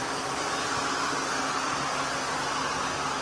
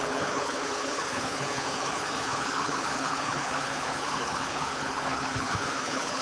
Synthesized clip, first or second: second